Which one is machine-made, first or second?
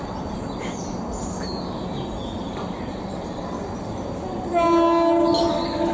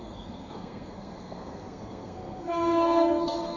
second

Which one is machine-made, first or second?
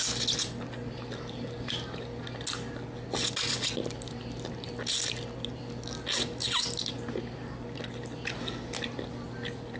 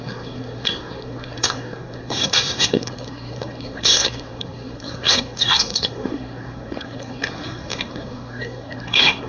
second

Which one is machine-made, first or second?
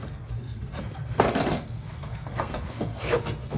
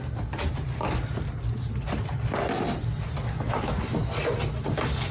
first